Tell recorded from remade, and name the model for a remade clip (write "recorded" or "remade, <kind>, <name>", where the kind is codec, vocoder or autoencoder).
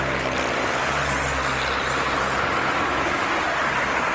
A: recorded